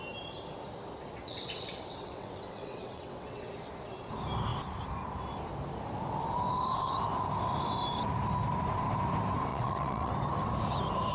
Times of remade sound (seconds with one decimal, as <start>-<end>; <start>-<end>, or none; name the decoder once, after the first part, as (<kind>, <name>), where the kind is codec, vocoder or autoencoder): 1.2-3.5 (vocoder, WaveNeXt); 9.5-10.1